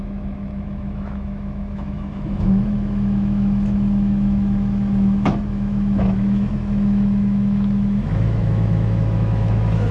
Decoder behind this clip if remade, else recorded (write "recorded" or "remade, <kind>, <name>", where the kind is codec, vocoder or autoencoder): remade, autoencoder, DAC-VAE